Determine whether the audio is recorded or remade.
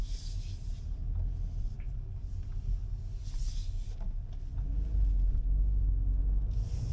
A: recorded